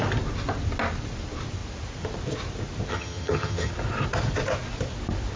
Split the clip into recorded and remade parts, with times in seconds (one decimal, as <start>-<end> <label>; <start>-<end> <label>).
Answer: 0.0-2.9 recorded; 2.9-3.7 remade; 3.7-5.4 recorded